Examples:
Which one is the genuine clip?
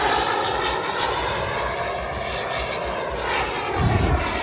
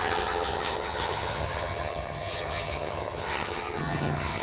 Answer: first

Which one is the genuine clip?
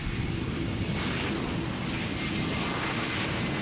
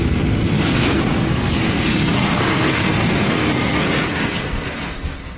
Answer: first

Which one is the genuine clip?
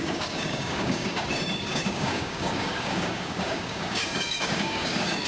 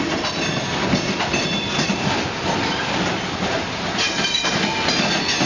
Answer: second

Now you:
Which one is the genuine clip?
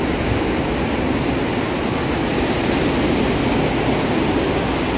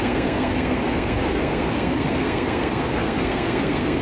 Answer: first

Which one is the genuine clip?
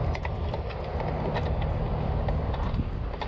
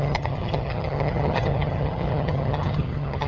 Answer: first